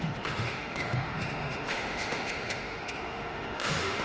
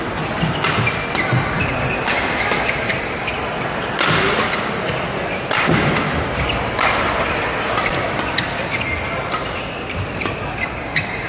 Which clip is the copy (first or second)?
first